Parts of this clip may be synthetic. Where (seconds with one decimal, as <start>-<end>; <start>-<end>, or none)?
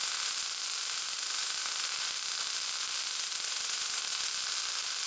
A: none